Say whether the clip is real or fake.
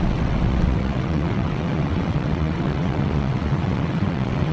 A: fake